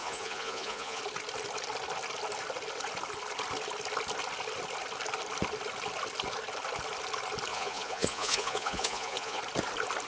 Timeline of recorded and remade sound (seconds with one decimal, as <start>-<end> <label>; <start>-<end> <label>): 0.0-1.0 remade; 1.0-7.5 recorded; 7.5-9.4 remade; 9.4-10.1 recorded

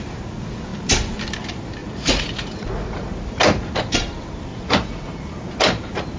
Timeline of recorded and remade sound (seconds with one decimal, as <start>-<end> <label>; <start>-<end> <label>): 0.0-1.8 recorded; 1.8-3.1 remade; 3.1-4.5 recorded; 4.5-5.2 remade; 5.2-6.2 recorded

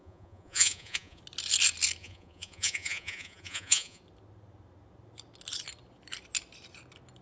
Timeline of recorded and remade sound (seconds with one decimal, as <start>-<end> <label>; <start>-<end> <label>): 0.0-1.2 remade; 1.2-2.0 recorded; 2.0-4.0 remade; 4.0-7.2 recorded

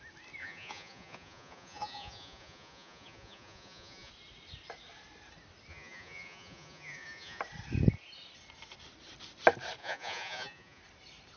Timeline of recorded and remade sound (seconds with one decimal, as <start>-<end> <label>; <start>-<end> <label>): 0.0-0.4 recorded; 0.4-4.1 remade; 4.1-5.7 recorded; 5.7-7.4 remade; 7.4-9.8 recorded; 9.8-10.8 remade; 10.8-11.4 recorded

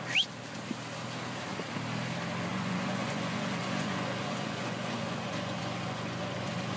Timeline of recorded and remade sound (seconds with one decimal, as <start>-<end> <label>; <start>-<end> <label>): 0.0-2.5 recorded; 2.5-6.8 remade

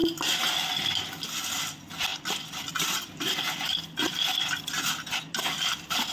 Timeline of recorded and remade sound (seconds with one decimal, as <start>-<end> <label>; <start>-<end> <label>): 0.0-6.1 recorded

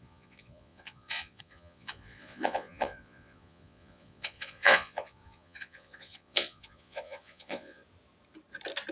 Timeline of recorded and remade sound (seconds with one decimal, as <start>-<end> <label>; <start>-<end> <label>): 0.0-7.8 remade; 7.8-8.9 recorded

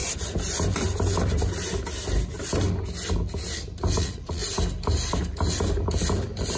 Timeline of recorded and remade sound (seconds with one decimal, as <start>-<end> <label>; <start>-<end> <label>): 0.0-4.0 recorded; 4.0-4.4 remade; 4.4-6.6 recorded